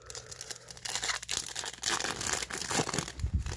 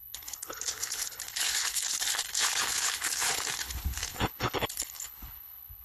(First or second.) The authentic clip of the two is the first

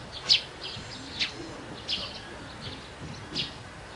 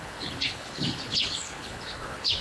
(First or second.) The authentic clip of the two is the first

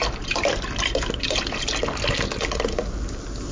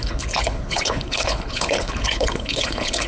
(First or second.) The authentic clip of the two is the first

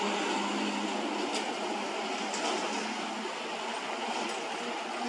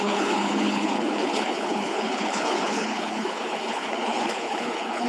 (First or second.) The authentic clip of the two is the first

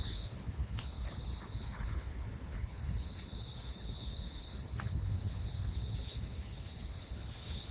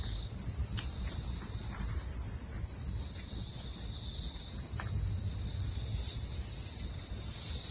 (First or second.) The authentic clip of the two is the second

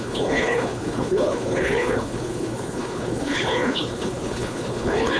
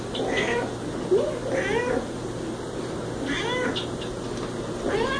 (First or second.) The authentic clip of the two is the second